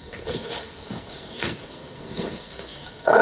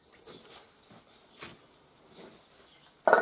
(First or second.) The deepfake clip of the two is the first